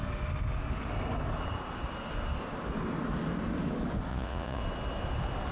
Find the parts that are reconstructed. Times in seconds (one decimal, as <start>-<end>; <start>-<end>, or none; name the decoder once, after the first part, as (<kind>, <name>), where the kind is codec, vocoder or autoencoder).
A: 4.1-4.6 (vocoder, Vocos)